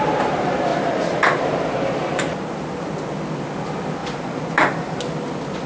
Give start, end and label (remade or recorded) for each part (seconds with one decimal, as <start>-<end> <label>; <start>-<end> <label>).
0.0-0.7 recorded; 0.7-1.8 remade; 1.8-4.0 recorded; 4.0-5.0 remade; 5.0-5.7 recorded